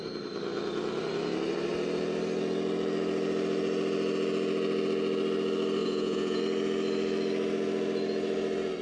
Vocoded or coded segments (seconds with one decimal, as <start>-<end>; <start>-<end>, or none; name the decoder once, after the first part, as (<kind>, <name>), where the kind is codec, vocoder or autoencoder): 5.8-6.4 (vocoder, Vocos)